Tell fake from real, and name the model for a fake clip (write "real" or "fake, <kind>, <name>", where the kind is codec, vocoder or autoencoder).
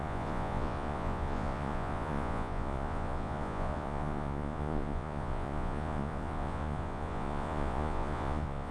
fake, vocoder, Vocos